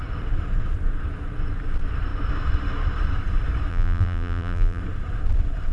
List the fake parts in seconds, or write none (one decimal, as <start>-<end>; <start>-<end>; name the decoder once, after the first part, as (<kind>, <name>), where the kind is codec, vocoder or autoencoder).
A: 3.7-4.8 (vocoder, BigVGAN v2)